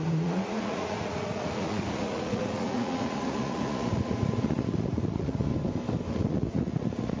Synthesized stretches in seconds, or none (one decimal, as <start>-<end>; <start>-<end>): 0.0-5.5; 6.1-7.2